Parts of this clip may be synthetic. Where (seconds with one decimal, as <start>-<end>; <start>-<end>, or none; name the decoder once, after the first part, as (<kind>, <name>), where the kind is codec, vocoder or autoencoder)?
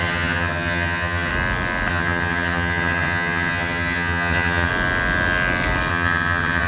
0.0-1.3 (vocoder, HiFi-GAN); 1.9-4.7; 5.9-6.7